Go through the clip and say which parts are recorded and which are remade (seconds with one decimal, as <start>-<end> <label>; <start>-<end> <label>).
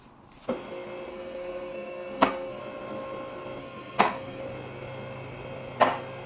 0.0-1.1 recorded; 1.1-2.6 remade; 2.6-3.6 recorded; 3.6-4.4 remade; 4.4-6.3 recorded